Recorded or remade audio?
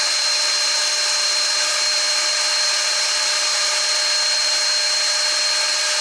recorded